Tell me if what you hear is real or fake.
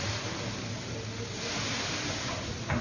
real